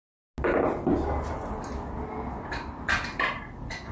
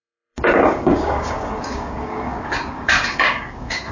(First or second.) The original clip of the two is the first